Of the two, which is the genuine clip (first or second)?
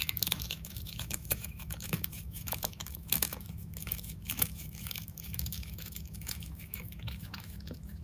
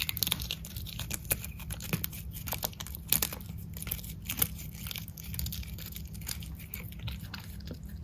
second